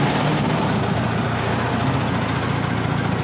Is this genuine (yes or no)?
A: yes